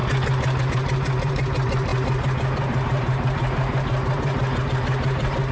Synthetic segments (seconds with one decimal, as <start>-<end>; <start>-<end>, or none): 0.6-5.5